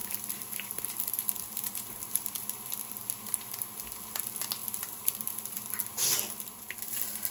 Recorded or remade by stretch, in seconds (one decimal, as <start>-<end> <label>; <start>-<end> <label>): 0.0-2.8 remade; 2.8-4.6 recorded; 4.6-5.6 remade; 5.6-7.3 recorded